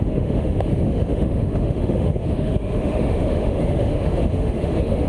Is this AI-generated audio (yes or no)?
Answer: yes